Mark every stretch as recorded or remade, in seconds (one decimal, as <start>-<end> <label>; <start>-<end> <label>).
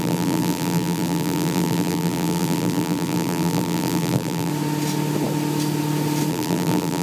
0.0-4.5 remade; 4.5-6.3 recorded; 6.3-7.0 remade